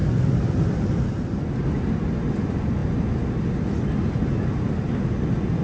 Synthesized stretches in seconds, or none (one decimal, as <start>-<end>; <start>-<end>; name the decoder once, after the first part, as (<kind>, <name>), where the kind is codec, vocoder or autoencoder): 0.0-1.1 (vocoder, BigVGAN v2)